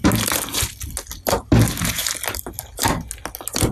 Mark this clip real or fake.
real